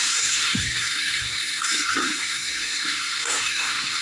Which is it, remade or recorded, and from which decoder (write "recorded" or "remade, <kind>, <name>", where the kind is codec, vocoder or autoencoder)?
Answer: remade, codec, SNAC